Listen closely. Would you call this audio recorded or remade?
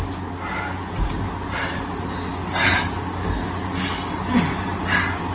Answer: recorded